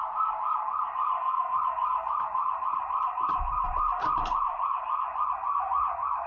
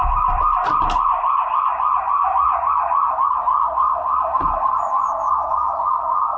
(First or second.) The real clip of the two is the second